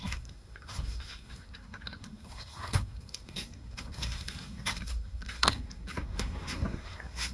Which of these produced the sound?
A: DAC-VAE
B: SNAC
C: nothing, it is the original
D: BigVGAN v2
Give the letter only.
B